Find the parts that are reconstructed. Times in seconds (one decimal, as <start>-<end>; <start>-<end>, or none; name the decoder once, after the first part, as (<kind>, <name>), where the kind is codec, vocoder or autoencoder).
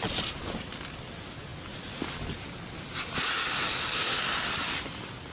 none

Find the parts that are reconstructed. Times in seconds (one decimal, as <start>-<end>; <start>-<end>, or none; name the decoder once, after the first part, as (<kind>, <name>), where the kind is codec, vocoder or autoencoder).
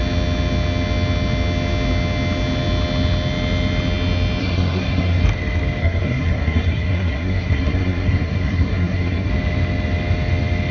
4.4-5.2 (codec, SNAC); 5.8-9.3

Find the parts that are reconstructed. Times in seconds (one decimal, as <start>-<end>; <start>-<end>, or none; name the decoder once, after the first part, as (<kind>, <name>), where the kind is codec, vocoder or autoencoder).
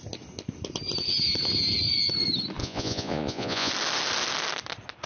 2.6-3.7 (vocoder, Vocos)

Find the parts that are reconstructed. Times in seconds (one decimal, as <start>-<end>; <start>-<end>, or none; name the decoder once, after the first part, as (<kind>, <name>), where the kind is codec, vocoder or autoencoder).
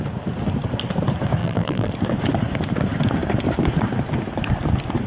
1.4-1.9 (vocoder, BigVGAN v2)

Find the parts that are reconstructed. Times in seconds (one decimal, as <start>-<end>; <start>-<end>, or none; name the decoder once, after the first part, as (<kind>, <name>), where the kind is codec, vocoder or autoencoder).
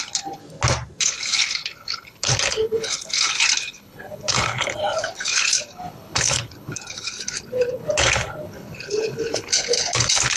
0.0-0.4 (codec, HILCodec); 1.0-10.4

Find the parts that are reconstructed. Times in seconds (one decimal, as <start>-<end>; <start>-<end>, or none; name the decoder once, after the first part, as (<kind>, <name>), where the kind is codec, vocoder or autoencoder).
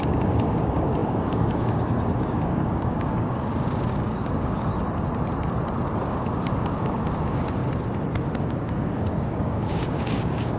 0.0-4.7 (codec, DAC); 6.0-7.6; 8.4-10.6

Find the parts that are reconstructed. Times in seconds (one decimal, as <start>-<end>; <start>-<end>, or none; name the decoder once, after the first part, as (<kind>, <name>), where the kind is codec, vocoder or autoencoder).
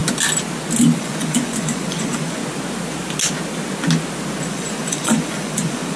1.0-2.4 (vocoder, Vocos); 4.5-6.0